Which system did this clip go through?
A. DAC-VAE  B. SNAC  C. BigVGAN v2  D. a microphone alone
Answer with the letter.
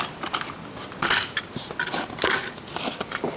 D